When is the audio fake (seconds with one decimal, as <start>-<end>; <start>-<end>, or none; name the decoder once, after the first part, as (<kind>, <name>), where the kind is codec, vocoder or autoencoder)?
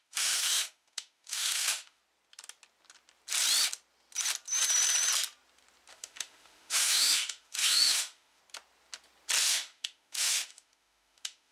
0.0-2.0 (autoencoder, DAC-VAE); 5.9-8.4; 9.4-11.5